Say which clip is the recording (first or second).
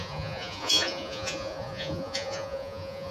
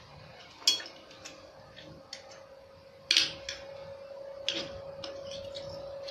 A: second